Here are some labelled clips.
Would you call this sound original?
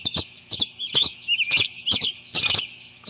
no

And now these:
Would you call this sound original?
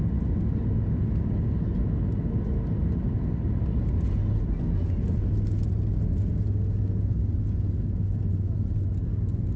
yes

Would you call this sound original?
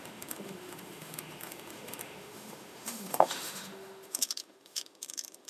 no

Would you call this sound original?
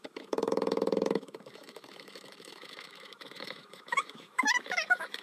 no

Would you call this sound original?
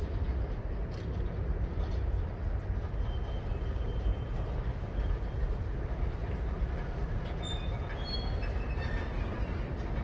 yes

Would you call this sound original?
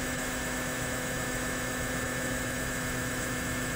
no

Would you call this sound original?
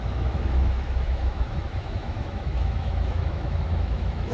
no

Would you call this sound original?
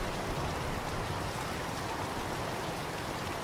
yes